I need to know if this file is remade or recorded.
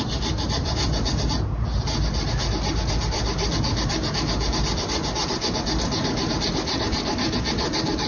recorded